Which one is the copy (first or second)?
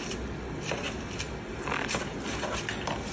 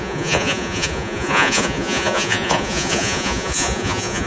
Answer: second